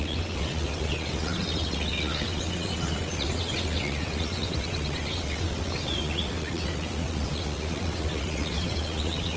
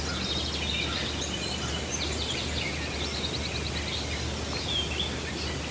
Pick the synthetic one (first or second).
first